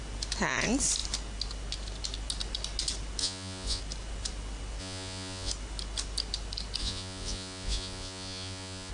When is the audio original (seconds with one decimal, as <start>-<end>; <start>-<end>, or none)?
0.0-3.2; 3.8-4.8; 5.5-6.8